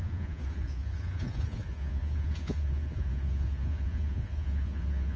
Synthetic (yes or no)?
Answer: yes